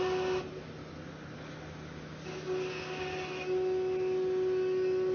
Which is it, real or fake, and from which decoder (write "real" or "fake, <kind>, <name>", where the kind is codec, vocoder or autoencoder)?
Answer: real